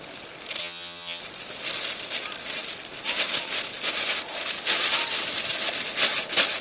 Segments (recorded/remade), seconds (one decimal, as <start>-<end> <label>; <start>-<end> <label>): 0.0-0.6 recorded; 0.6-1.2 remade; 1.2-6.6 recorded